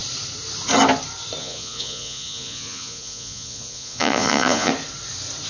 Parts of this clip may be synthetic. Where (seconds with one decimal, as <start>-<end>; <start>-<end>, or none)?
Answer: 1.4-4.7